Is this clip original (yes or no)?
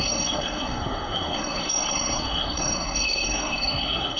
no